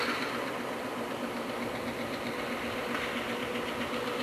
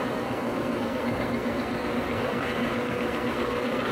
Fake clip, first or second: second